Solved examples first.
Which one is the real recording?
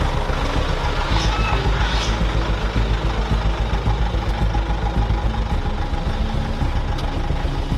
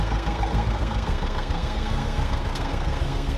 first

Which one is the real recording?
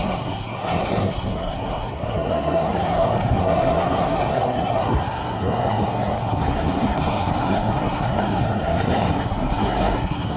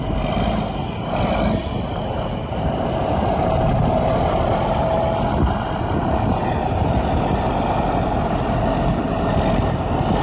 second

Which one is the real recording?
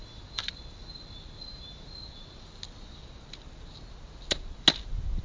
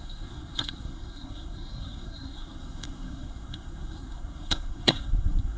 first